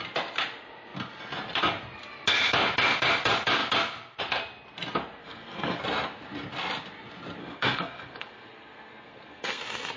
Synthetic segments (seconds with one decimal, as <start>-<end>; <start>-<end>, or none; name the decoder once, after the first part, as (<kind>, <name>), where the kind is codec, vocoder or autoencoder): 5.2-5.8 (codec, SNAC); 7.4-9.6